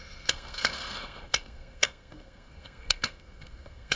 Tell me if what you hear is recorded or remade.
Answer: remade